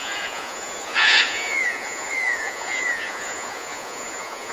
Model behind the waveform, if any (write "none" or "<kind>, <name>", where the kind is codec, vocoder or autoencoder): vocoder, Vocos